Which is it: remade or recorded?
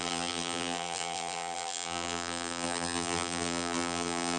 remade